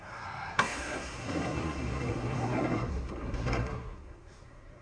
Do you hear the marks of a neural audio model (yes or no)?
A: yes